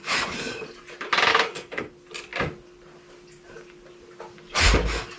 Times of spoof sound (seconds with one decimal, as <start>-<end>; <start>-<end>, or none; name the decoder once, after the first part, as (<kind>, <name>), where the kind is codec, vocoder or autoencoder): 1.3-1.9 (codec, SNAC)